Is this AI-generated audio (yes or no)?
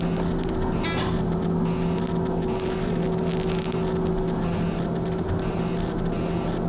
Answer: no